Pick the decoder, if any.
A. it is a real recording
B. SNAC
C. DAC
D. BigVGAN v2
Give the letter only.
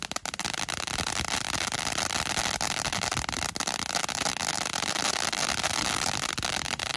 A